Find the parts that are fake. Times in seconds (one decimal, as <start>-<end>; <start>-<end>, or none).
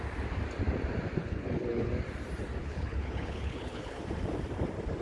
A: 1.2-1.9; 2.6-4.0